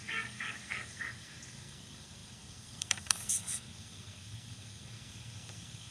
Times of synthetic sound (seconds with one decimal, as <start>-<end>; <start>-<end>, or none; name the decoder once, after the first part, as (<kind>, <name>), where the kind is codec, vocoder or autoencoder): 0.0-5.9 (codec, SNAC)